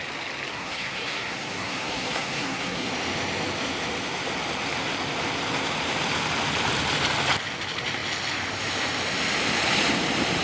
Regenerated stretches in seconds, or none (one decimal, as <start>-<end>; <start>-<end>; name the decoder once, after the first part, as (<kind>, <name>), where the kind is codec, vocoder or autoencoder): 0.5-2.9 (codec, SNAC)